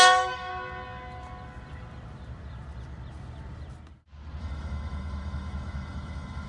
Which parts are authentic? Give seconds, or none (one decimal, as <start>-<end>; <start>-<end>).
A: 0.5-4.4